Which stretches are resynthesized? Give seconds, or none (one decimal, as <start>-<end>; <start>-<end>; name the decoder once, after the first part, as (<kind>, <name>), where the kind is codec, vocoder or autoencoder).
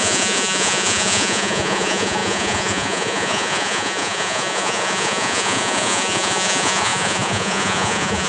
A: 0.0-8.3 (vocoder, Vocos)